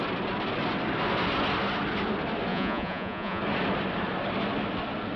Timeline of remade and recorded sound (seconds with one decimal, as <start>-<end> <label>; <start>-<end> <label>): 0.0-2.5 recorded; 2.5-3.4 remade; 3.4-5.2 recorded